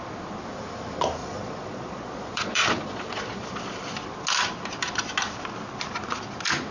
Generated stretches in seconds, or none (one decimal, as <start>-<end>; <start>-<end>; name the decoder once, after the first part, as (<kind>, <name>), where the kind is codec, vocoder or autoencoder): 1.2-3.6 (vocoder, Vocos)

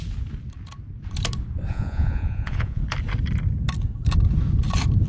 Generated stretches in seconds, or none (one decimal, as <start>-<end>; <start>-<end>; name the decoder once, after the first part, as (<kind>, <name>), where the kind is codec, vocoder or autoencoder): 1.7-2.8 (vocoder, Vocos)

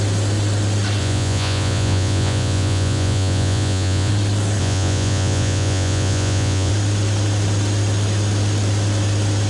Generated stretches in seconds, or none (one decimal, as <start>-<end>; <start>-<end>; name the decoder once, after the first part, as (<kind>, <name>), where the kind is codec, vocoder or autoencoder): 1.0-4.1 (vocoder, Vocos); 4.6-6.7

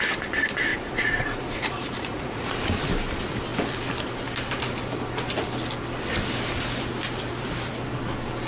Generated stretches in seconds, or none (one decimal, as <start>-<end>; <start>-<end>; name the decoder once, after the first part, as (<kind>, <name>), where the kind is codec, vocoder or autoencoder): 0.7-2.5 (vocoder, Vocos)